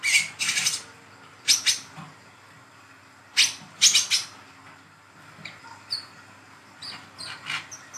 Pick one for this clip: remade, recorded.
recorded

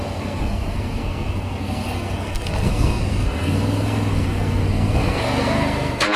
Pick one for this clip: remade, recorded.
remade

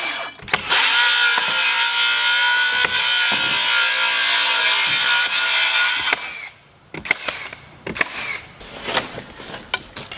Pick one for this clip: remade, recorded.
recorded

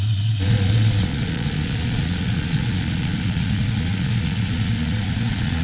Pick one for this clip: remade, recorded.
remade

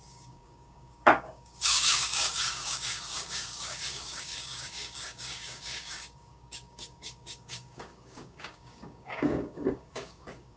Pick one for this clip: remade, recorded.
remade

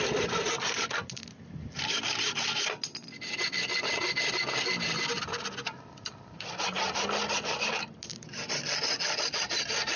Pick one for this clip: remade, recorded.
recorded